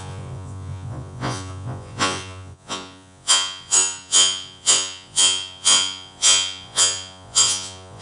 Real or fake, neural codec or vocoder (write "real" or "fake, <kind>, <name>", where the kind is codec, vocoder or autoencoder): fake, vocoder, Vocos